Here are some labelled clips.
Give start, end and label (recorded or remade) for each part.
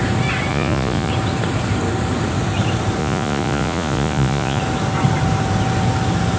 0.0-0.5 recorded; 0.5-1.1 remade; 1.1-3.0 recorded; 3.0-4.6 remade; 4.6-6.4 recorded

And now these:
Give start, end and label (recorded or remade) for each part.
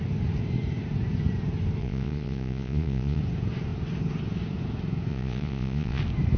0.0-1.8 recorded; 1.8-3.2 remade; 3.2-5.1 recorded; 5.1-6.0 remade; 6.0-6.4 recorded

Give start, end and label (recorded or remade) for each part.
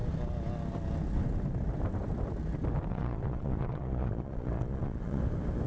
0.0-2.9 recorded; 2.9-5.2 remade; 5.2-5.7 recorded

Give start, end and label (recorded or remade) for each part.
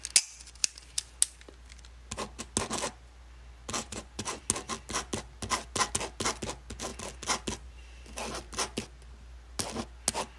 0.0-3.8 recorded; 3.8-4.4 remade; 4.4-10.4 recorded